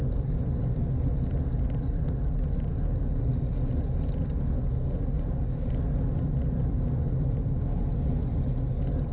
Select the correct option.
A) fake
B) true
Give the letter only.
B